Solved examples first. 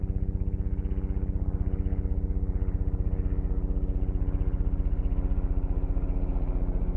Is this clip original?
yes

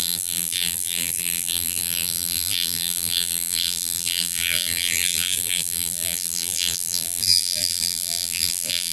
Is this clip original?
no